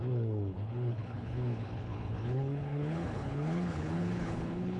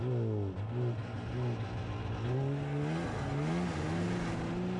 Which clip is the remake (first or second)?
first